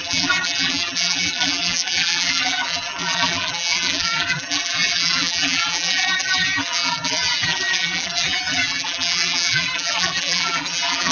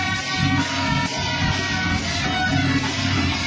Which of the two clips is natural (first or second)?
second